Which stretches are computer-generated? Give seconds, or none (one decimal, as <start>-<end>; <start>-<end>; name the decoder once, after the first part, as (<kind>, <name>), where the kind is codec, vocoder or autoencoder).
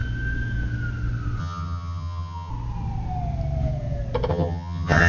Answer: 1.4-2.5 (vocoder, HiFi-GAN); 4.3-5.1